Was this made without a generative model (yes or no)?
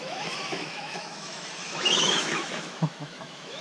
no